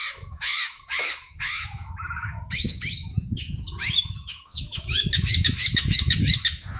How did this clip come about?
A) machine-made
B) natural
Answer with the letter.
A